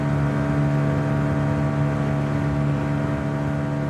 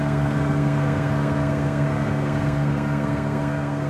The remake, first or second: second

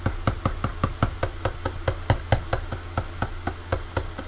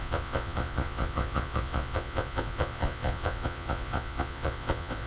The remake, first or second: second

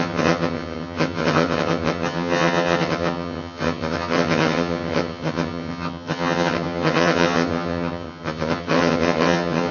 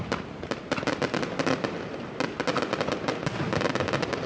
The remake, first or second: first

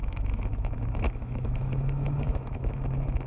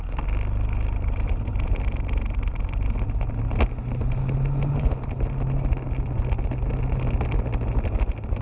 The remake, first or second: first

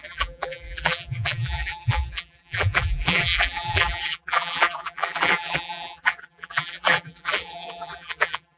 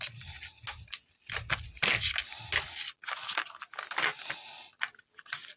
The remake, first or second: first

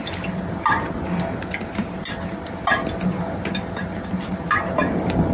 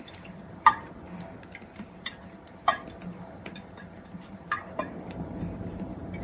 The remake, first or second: second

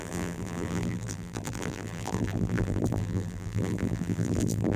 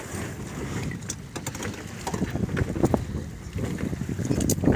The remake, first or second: first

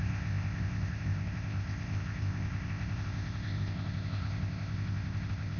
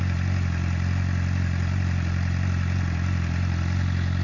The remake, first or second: first